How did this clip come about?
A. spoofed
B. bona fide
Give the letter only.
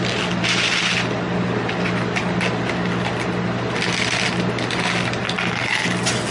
B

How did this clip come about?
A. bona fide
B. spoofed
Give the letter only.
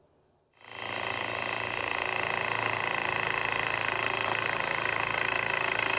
A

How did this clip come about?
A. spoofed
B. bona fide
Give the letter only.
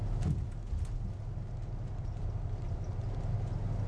B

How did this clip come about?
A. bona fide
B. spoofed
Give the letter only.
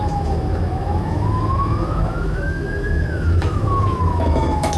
B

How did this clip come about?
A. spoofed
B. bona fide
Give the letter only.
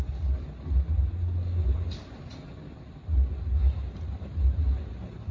B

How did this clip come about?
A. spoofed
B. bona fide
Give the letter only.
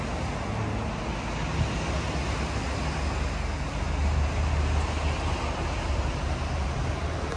B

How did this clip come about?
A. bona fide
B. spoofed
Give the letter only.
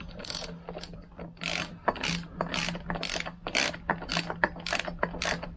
A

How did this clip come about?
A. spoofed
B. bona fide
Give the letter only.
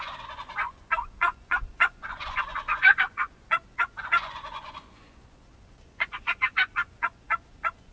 A